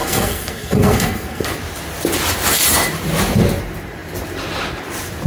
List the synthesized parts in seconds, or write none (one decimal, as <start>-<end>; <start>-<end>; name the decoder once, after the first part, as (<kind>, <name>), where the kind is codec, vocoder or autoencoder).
0.0-1.5 (codec, SNAC)